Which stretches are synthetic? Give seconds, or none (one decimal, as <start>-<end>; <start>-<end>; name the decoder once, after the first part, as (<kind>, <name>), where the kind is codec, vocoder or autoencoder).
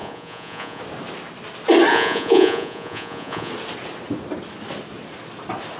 0.0-0.8 (vocoder, Vocos); 1.9-3.5